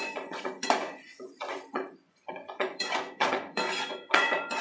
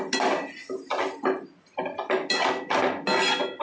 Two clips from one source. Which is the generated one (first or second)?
first